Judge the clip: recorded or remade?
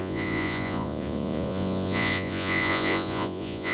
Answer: remade